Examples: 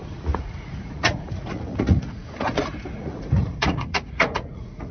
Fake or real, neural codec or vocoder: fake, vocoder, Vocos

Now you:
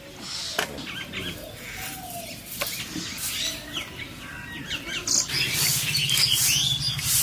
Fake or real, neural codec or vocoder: real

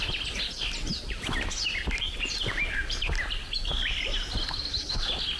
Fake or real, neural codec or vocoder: real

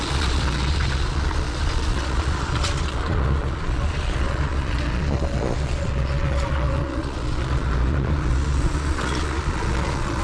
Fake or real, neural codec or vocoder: fake, vocoder, Vocos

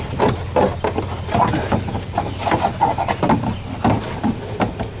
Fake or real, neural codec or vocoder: real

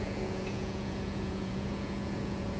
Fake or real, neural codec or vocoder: fake, vocoder, Vocos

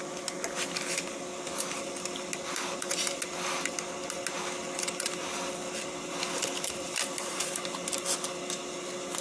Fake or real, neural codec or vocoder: real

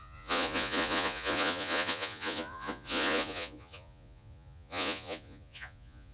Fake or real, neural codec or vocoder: fake, vocoder, Vocos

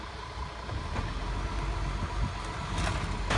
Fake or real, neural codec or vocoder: real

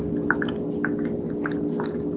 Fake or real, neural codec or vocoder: real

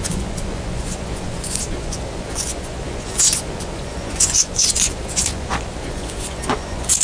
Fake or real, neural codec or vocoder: fake, vocoder, Vocos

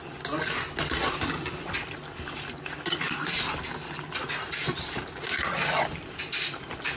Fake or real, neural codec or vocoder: real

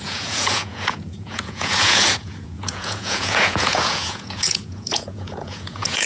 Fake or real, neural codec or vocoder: fake, vocoder, Vocos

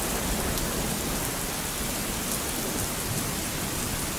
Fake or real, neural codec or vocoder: real